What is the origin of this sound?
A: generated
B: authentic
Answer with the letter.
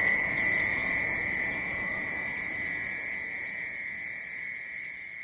A